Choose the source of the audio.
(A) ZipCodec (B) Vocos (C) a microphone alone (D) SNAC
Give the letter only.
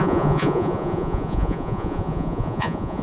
B